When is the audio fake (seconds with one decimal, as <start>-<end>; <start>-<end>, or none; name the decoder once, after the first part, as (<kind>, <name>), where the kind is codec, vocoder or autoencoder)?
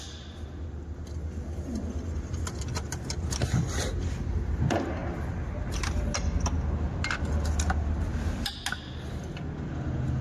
none